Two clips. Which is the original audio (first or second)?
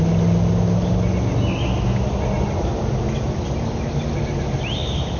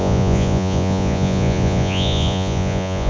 first